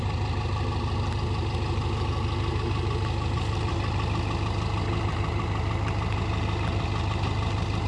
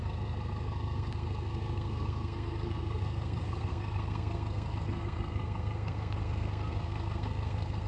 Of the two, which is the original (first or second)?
first